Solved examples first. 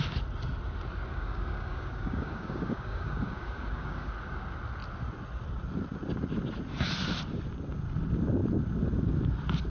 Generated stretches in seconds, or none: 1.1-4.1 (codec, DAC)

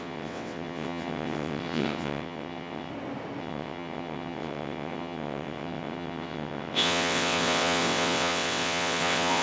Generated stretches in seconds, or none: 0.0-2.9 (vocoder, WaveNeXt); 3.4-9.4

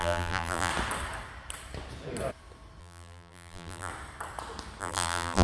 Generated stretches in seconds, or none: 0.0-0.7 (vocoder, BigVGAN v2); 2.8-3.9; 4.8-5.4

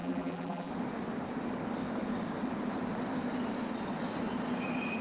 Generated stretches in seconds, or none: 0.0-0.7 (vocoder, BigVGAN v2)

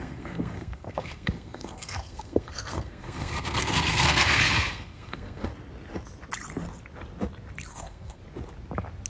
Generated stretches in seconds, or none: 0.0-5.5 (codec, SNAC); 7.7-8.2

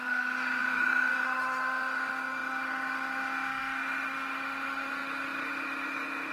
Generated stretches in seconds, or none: 0.0-6.3 (autoencoder, DAC-VAE)

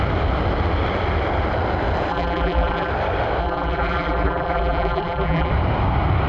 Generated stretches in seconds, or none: 2.1-2.9 (vocoder, BigVGAN v2); 3.4-5.5

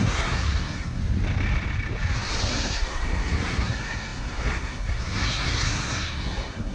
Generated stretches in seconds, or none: 0.0-1.0 (codec, SNAC); 2.5-6.7